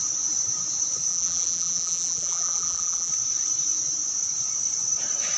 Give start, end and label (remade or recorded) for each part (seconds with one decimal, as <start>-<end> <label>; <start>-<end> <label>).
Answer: 0.0-1.1 recorded; 1.1-3.1 remade; 3.1-5.4 recorded